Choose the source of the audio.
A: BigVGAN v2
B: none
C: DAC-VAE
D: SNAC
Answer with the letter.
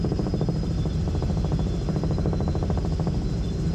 A